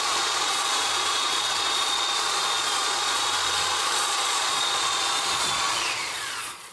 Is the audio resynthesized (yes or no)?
yes